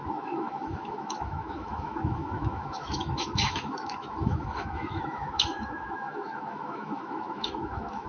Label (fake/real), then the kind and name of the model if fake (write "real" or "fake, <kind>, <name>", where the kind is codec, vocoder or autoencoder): fake, autoencoder, DAC-VAE